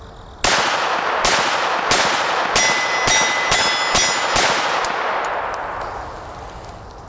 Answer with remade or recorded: recorded